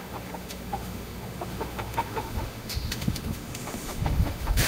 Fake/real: fake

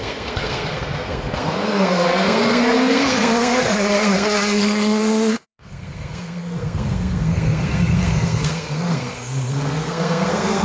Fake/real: fake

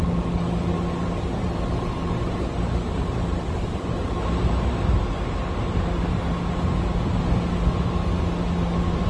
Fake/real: real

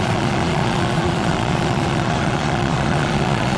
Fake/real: fake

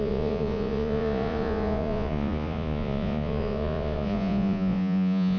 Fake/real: fake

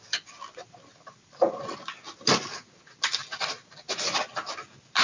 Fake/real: real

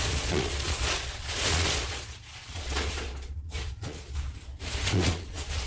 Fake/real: fake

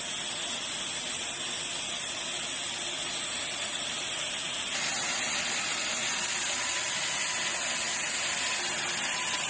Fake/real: real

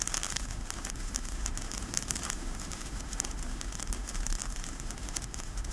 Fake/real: fake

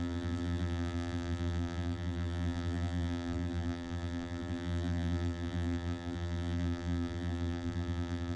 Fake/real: fake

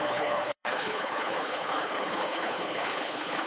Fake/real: fake